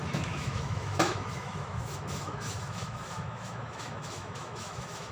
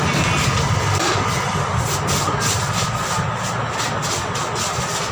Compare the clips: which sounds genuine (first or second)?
second